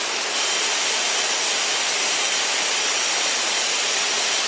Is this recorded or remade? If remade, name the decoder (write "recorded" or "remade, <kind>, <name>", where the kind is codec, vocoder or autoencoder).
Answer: recorded